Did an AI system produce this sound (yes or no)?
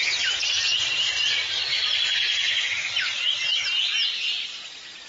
no